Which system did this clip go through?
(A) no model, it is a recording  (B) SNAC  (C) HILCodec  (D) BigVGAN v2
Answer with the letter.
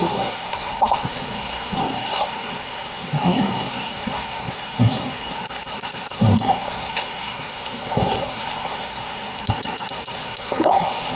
B